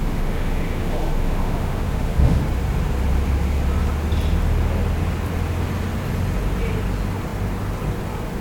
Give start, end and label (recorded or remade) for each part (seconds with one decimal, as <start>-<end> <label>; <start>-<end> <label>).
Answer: 0.0-2.4 remade; 2.4-8.4 recorded